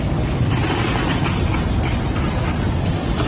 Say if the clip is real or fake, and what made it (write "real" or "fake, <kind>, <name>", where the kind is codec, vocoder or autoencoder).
real